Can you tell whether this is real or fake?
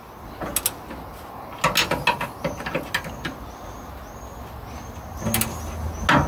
real